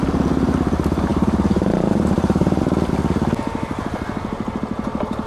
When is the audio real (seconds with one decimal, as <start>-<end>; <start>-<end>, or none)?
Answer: 0.0-1.1; 2.6-5.3